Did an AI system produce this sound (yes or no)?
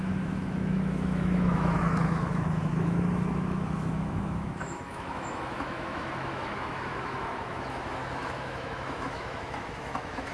yes